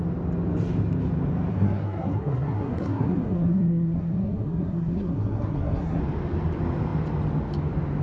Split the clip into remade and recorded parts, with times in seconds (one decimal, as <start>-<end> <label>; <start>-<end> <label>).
0.0-1.5 recorded; 1.5-6.0 remade; 6.0-8.0 recorded